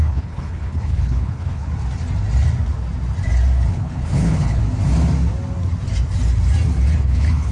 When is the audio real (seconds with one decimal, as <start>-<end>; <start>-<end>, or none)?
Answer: 1.7-3.7; 4.6-7.0